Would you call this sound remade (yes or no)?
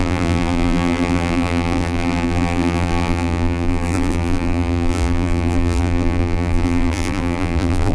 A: yes